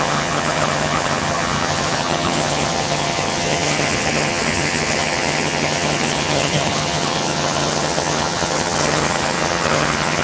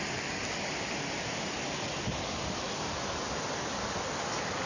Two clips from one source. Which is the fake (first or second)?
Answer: first